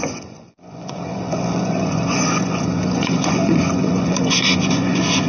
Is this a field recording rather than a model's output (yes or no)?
no